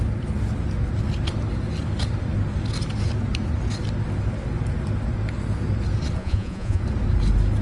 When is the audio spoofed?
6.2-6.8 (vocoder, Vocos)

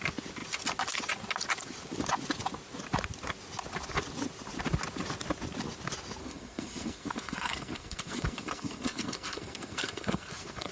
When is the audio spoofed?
6.2-10.7 (codec, SNAC)

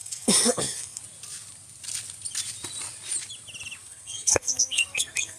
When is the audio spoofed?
0.0-1.0 (codec, SNAC); 3.8-5.4